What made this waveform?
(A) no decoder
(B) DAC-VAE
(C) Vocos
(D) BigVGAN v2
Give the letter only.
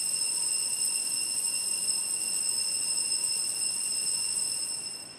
C